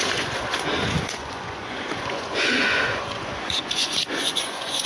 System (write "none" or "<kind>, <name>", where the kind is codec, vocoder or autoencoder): vocoder, Vocos